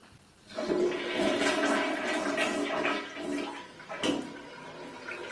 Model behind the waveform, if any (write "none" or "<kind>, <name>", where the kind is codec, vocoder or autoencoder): none